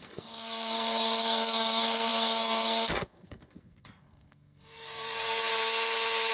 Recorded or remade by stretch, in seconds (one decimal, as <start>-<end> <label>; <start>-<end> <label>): 0.0-5.5 remade; 5.5-6.3 recorded